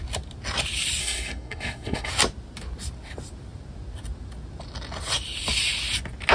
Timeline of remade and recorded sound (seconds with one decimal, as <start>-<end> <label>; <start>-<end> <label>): 0.0-1.0 recorded; 1.0-2.1 remade; 2.1-6.3 recorded